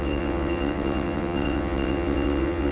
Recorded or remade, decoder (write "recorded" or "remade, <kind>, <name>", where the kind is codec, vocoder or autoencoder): remade, vocoder, WaveNeXt